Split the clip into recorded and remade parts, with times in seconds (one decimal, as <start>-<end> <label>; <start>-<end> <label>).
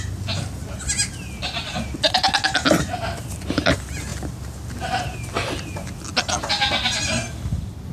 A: 0.0-7.9 recorded